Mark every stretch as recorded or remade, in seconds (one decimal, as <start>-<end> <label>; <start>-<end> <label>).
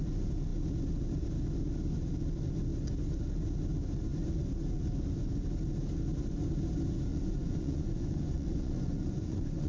0.0-7.1 recorded; 7.1-9.7 remade